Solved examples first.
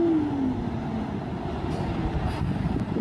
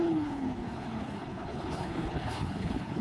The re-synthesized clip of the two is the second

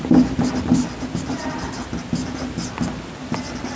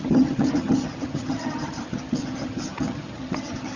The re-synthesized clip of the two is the second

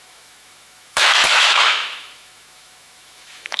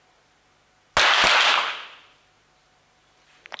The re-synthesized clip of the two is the first